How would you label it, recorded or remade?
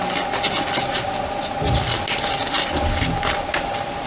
recorded